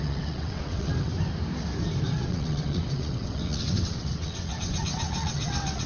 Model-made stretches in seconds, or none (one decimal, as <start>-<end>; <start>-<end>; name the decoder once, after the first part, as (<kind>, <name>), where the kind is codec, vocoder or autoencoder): 0.0-1.1 (vocoder, WaveNeXt); 2.1-5.9